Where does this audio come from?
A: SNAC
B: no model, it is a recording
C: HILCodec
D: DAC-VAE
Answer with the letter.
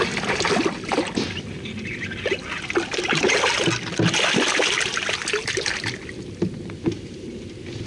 B